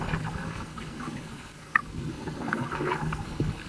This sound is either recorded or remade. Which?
remade